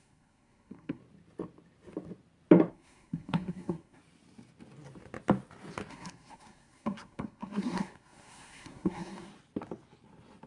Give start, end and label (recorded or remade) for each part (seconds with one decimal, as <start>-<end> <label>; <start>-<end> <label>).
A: 0.0-1.0 remade; 1.0-2.7 recorded; 2.7-4.0 remade; 4.0-5.9 recorded; 5.9-9.3 remade; 9.3-10.5 recorded

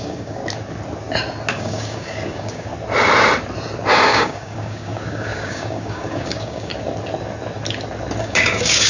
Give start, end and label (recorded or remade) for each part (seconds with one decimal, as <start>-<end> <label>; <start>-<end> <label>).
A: 0.0-0.4 remade; 0.4-1.5 recorded; 1.5-2.7 remade; 2.7-3.9 recorded; 3.9-6.7 remade; 6.7-8.2 recorded; 8.2-8.9 remade

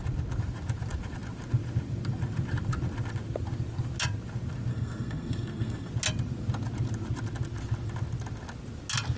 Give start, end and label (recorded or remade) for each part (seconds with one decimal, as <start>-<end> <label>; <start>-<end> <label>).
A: 0.0-4.7 recorded; 4.7-5.9 remade; 5.9-9.2 recorded

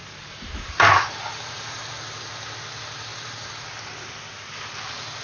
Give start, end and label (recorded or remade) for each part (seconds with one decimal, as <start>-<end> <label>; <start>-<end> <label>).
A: 0.0-1.9 remade; 1.9-3.1 recorded; 3.1-3.7 remade; 3.7-5.2 recorded